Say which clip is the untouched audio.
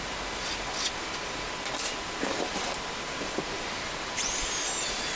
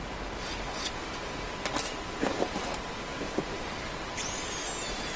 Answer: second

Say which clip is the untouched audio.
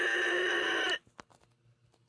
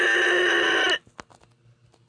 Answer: second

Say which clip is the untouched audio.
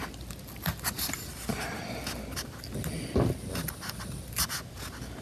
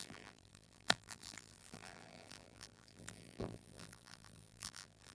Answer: first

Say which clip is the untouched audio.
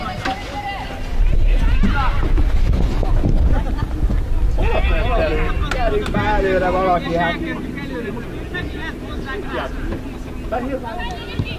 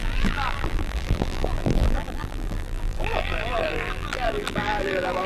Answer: first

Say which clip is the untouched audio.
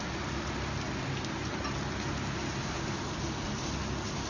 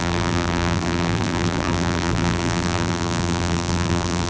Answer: first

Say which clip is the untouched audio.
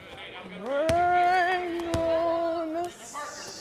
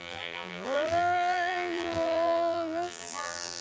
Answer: first